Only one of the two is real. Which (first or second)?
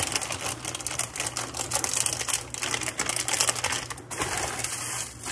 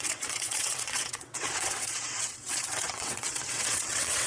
first